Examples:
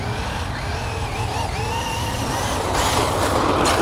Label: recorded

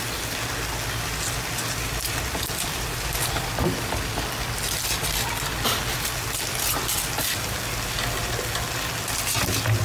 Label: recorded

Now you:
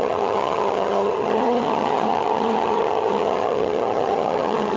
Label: remade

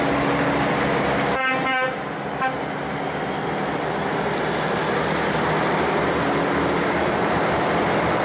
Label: recorded